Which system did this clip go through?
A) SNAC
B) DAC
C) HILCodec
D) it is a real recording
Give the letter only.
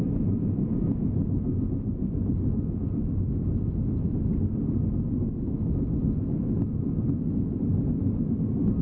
D